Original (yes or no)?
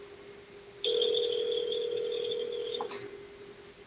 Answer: yes